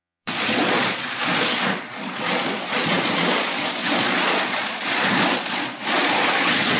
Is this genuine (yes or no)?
no